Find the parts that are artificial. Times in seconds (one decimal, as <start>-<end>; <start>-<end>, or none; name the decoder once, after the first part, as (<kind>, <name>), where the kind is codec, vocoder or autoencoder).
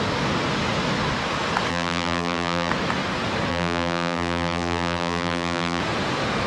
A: 1.7-2.7 (vocoder, BigVGAN v2); 3.5-5.8